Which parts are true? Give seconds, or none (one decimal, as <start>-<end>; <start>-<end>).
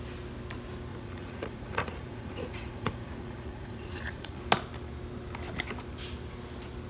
0.0-0.9; 4.4-6.9